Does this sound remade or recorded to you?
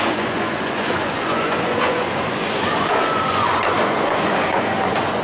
remade